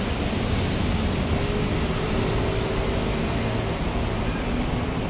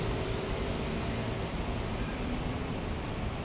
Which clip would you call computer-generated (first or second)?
second